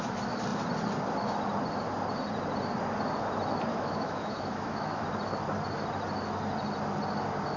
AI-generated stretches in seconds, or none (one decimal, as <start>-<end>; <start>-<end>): 3.7-5.0